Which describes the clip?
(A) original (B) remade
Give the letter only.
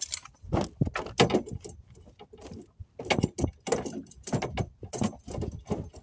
A